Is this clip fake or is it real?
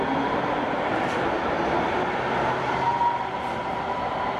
real